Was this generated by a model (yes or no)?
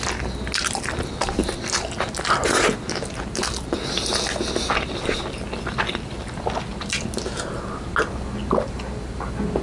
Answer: no